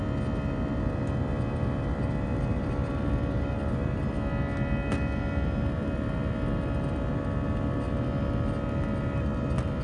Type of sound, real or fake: real